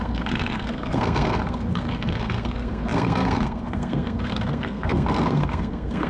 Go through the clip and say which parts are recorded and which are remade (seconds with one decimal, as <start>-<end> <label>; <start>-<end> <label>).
0.0-6.1 remade